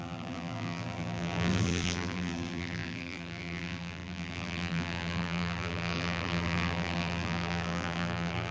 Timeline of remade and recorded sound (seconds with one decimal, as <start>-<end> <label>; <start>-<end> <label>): 0.0-8.5 remade